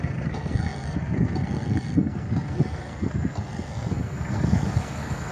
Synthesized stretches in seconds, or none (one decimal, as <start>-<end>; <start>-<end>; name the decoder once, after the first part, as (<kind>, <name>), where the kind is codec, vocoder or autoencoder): 0.0-5.3 (codec, SNAC)